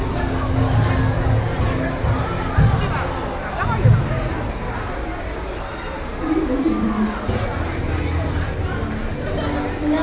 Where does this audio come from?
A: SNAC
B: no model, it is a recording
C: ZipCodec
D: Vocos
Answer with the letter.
B